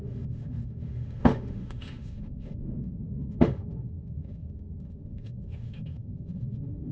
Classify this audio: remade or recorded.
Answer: remade